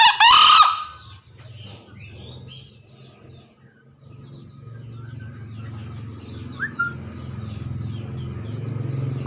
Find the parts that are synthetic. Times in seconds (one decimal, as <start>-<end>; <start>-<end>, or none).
none